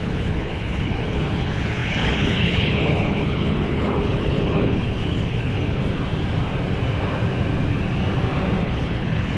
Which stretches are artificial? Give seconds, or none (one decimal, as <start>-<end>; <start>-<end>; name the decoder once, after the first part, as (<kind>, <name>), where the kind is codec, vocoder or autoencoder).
0.0-5.8 (codec, HILCodec); 8.6-9.4